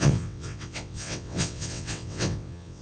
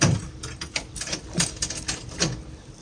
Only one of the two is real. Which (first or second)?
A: second